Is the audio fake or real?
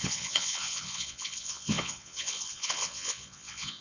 fake